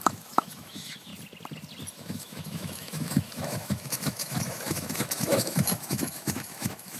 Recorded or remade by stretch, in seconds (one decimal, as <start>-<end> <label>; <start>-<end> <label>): 0.0-1.1 remade; 1.1-1.9 recorded; 1.9-7.0 remade